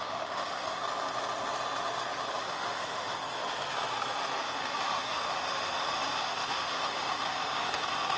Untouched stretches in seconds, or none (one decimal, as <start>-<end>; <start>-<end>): 0.8-2.4; 3.2-4.4